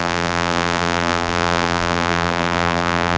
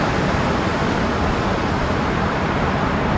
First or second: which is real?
second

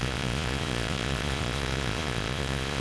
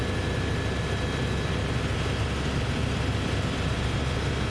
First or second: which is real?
second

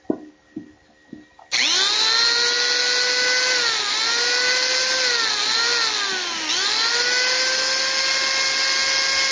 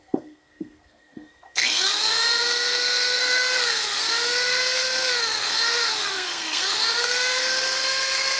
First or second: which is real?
first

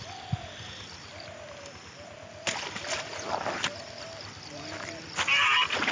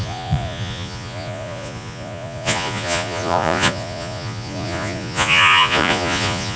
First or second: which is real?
first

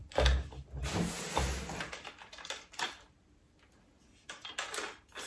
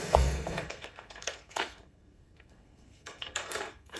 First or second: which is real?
first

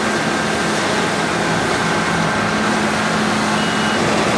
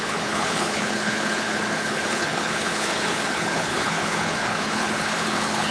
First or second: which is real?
first